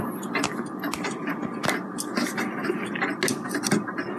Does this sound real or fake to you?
real